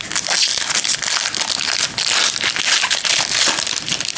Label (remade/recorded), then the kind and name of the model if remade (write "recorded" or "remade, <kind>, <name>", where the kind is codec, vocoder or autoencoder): recorded